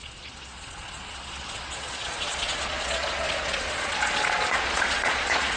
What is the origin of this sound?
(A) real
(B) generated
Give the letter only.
B